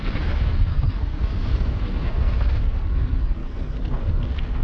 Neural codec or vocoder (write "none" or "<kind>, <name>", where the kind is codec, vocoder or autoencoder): codec, SNAC